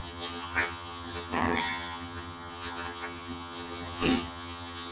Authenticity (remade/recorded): remade